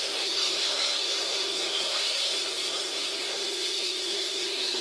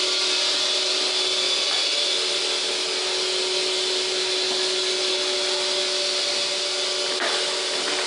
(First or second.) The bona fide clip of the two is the second